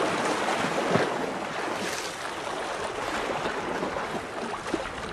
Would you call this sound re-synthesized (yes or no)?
no